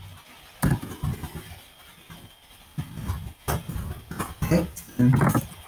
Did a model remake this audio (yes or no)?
no